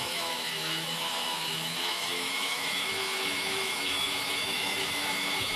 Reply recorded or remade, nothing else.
remade